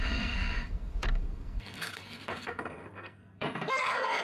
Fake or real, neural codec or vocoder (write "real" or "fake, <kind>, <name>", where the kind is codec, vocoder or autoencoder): fake, codec, SNAC